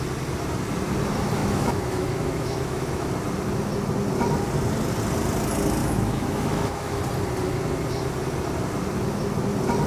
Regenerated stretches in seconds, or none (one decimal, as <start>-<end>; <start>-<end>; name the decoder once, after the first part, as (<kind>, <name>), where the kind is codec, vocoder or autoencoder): 1.4-3.1 (autoencoder, DAC-VAE); 5.8-7.0